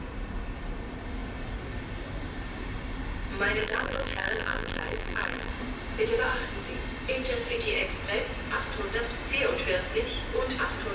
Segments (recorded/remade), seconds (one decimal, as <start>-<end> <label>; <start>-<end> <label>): 0.0-3.6 recorded; 3.6-5.5 remade; 5.5-10.9 recorded